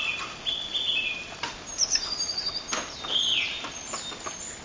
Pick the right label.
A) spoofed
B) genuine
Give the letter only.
B